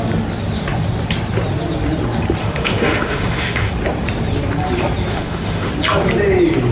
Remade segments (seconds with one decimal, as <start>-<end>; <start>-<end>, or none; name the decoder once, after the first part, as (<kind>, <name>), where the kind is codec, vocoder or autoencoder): 2.4-3.7 (autoencoder, DAC-VAE); 5.1-5.7